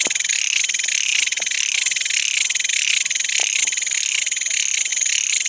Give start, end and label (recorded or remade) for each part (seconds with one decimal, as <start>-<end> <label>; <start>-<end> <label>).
0.0-5.5 recorded